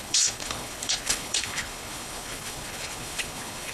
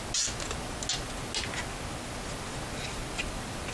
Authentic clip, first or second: second